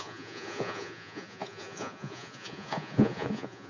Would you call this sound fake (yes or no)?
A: yes